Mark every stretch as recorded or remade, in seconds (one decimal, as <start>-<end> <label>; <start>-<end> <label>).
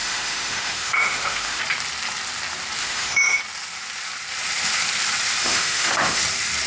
0.0-1.6 remade; 1.6-2.8 recorded; 2.8-3.4 remade; 3.4-5.4 recorded; 5.4-6.2 remade; 6.2-6.7 recorded